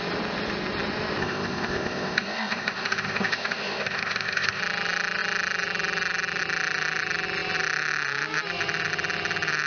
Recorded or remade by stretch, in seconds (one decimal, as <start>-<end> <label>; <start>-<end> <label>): 0.0-1.2 recorded; 1.2-4.6 remade; 4.6-9.7 recorded